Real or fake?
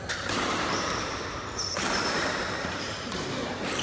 fake